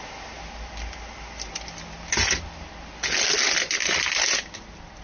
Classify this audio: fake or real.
real